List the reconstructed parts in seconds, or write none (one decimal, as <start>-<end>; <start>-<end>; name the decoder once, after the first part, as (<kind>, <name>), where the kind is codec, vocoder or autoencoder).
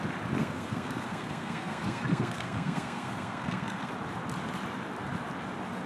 0.4-3.9 (codec, SNAC)